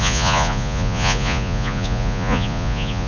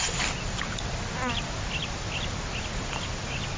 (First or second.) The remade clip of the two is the first